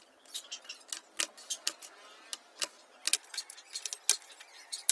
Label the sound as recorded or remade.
recorded